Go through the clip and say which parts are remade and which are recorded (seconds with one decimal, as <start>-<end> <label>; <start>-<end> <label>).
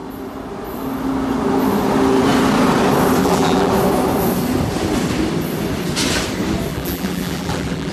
0.0-3.2 recorded; 3.2-3.7 remade; 3.7-6.7 recorded; 6.7-7.9 remade